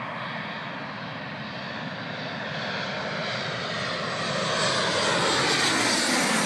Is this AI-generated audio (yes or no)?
no